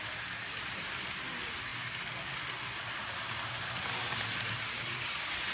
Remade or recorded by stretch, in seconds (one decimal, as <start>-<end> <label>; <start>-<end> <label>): 0.0-5.5 recorded